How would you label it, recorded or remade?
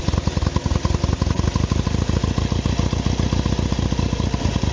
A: recorded